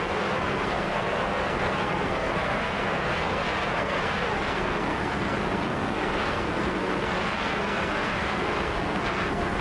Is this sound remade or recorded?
remade